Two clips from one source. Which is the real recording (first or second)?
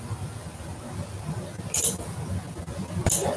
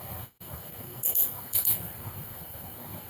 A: first